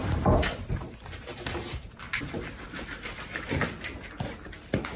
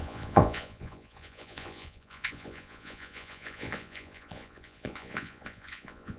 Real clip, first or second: first